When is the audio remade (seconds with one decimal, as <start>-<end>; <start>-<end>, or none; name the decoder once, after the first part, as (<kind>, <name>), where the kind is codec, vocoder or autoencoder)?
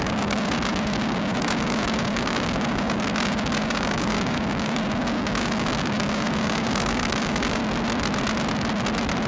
0.0-7.6 (codec, DAC)